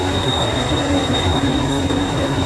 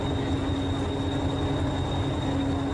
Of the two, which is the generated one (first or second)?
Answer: first